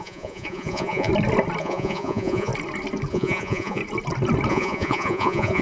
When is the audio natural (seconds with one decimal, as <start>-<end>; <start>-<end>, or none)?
1.1-1.6; 2.5-3.1; 3.8-4.5

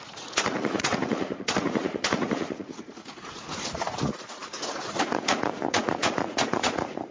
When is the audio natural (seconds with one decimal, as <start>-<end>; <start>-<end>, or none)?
none

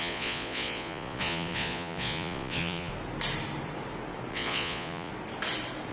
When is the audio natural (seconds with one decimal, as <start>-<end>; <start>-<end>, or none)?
2.9-4.3; 5.1-5.9

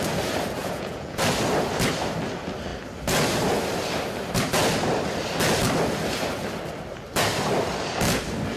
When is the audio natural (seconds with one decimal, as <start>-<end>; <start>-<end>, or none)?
0.0-0.6; 1.2-8.6

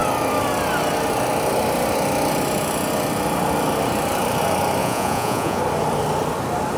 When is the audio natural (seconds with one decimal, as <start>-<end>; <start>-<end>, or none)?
0.0-4.8; 5.6-6.8

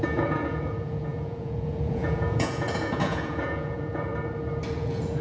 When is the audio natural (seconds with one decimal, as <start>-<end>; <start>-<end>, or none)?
4.1-4.7

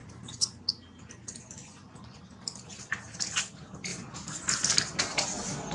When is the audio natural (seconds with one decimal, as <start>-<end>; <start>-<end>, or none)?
0.0-1.6; 2.2-5.7

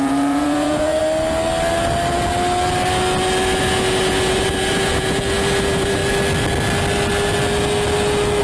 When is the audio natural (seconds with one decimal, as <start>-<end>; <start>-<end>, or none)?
1.0-3.6; 6.0-8.4